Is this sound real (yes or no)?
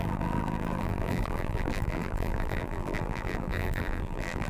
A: no